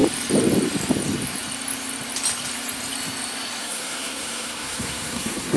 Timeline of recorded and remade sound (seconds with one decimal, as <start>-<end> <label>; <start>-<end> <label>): 0.0-3.6 recorded; 3.6-5.6 remade